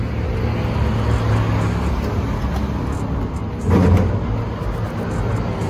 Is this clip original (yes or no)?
yes